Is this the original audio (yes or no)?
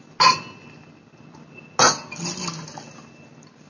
yes